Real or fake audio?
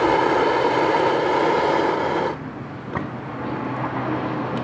real